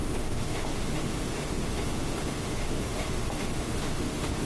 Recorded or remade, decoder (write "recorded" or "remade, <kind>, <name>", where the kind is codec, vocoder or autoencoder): remade, autoencoder, DAC-VAE